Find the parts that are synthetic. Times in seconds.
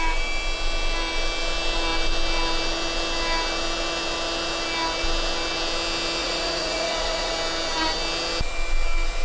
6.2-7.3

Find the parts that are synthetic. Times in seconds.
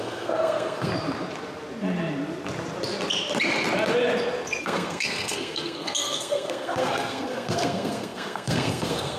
0.0-0.9; 4.6-9.2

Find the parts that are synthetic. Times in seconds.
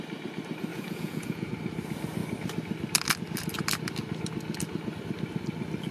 0.7-1.5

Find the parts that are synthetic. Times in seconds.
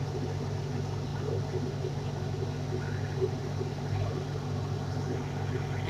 none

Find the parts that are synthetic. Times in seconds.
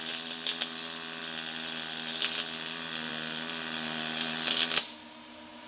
none